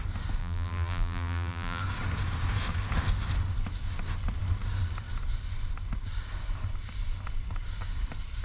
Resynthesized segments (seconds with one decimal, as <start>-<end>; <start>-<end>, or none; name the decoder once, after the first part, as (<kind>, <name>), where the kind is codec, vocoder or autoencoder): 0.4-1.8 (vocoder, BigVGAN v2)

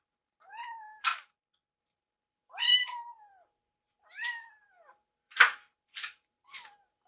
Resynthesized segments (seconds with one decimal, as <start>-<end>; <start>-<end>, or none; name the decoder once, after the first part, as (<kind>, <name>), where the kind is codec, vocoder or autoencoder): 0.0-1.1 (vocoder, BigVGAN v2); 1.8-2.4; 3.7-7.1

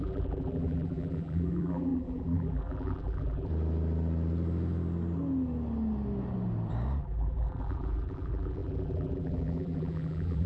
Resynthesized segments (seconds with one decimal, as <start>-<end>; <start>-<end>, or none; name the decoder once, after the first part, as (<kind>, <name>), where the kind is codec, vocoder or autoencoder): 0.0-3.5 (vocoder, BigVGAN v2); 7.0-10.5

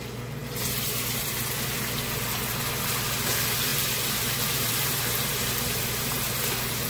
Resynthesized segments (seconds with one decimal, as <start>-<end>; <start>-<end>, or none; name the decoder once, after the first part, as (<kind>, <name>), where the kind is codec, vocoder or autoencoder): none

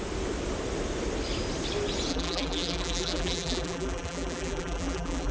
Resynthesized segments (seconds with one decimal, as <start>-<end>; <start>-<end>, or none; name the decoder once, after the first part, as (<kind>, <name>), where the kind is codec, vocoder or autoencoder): 2.1-5.3 (vocoder, BigVGAN v2)

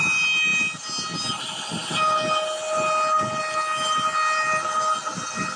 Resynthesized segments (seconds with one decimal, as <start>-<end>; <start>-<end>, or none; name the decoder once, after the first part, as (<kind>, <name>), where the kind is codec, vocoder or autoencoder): none

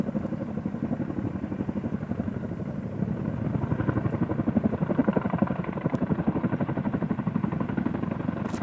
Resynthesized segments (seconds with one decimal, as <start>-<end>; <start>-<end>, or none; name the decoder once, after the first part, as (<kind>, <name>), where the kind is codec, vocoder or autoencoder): 5.0-8.6 (vocoder, BigVGAN v2)